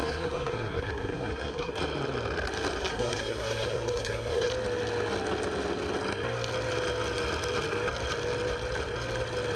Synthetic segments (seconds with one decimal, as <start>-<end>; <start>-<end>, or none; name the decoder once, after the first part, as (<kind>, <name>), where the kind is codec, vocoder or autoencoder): 0.0-1.7 (codec, SNAC); 2.9-4.5